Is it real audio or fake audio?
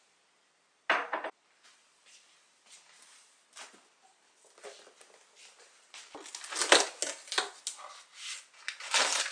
real